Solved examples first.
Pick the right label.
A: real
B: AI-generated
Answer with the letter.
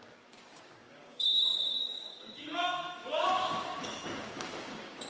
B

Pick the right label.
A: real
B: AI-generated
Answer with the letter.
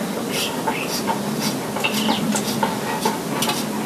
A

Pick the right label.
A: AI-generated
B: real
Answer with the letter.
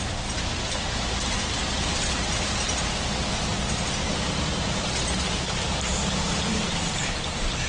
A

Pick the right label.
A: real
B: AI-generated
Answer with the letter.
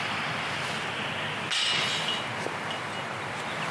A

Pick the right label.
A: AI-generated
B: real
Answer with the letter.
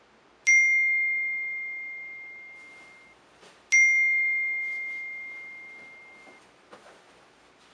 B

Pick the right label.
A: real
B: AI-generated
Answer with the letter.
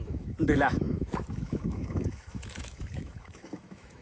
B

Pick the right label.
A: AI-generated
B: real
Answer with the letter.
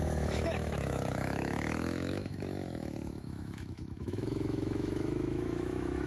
A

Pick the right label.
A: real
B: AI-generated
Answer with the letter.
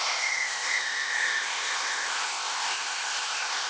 B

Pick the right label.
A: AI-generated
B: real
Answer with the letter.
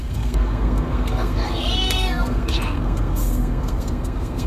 A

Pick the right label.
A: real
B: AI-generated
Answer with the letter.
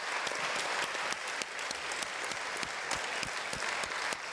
A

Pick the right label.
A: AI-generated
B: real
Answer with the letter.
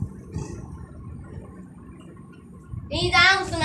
B